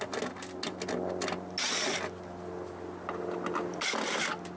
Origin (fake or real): real